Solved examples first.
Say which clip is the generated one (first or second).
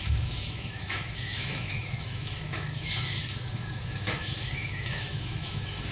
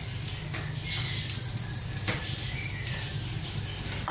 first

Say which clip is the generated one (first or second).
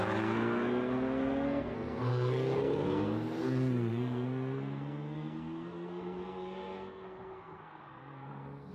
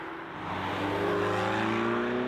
first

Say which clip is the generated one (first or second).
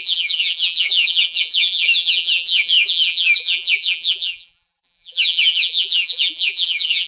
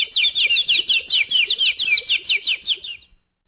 first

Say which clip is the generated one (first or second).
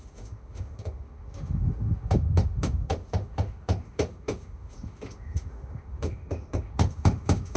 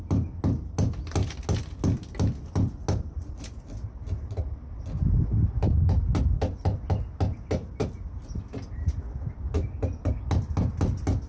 first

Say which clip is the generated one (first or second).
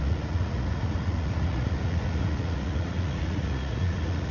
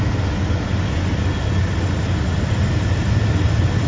first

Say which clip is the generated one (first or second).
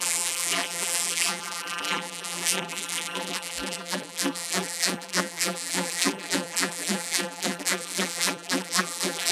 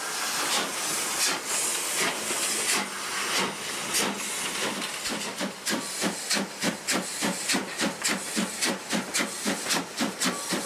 first